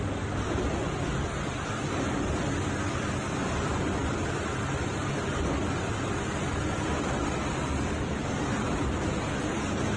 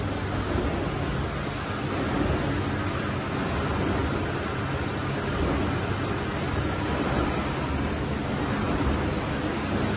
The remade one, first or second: first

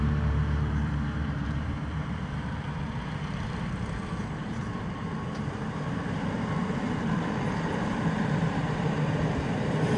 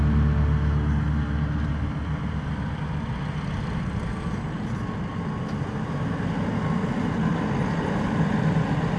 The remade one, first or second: first